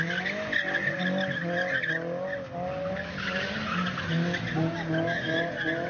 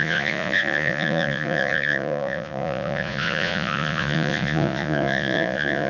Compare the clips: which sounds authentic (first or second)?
first